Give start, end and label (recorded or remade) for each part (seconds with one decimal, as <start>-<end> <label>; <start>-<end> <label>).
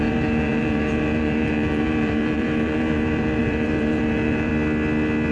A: 0.0-4.5 remade; 4.5-5.3 recorded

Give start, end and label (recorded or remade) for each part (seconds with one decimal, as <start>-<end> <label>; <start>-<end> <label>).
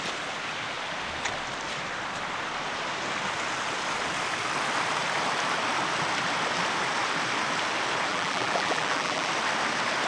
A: 0.0-8.1 recorded; 8.1-9.3 remade; 9.3-10.1 recorded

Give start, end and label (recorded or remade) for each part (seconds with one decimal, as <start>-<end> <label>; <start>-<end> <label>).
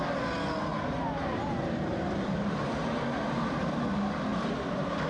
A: 0.0-0.7 recorded; 0.7-3.8 remade; 3.8-4.3 recorded; 4.3-5.1 remade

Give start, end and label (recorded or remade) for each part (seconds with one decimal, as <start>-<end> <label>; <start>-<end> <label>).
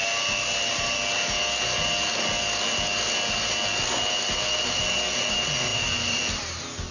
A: 0.0-5.7 recorded; 5.7-6.2 remade; 6.2-6.9 recorded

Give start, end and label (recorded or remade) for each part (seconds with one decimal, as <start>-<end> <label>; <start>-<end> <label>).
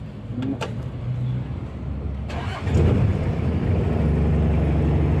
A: 0.0-3.1 recorded; 3.1-3.9 remade; 3.9-5.2 recorded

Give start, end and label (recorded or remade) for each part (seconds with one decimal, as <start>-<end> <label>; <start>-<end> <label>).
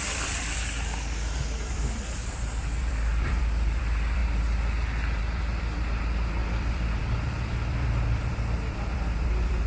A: 0.0-0.6 remade; 0.6-1.4 recorded; 1.4-9.7 remade